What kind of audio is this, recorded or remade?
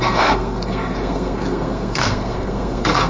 remade